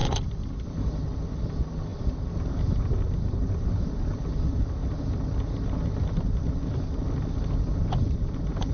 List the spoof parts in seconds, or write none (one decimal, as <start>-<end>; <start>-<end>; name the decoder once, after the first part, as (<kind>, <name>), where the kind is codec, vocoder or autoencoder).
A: 0.0-0.8 (vocoder, BigVGAN v2); 1.9-2.6